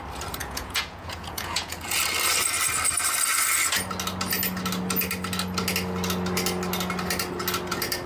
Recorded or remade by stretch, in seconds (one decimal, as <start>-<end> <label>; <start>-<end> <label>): 0.0-0.4 recorded; 0.4-2.0 remade; 2.0-8.1 recorded